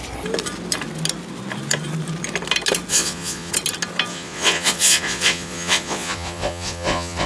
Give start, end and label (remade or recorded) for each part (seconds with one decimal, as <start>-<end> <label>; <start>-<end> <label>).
0.0-2.9 recorded; 2.9-3.5 remade; 3.5-4.1 recorded; 4.1-7.3 remade